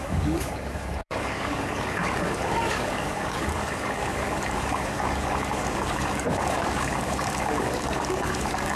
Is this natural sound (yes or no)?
no